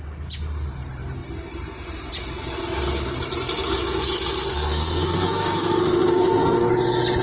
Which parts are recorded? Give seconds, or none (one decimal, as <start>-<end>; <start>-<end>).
0.0-4.5; 6.7-7.2

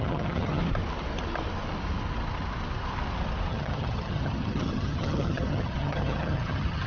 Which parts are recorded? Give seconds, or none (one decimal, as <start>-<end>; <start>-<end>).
0.6-3.5